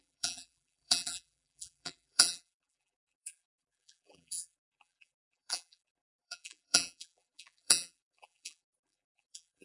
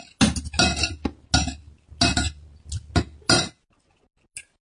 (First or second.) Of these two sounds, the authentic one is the second